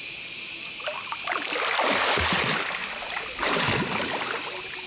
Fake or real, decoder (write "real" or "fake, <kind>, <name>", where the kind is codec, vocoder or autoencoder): real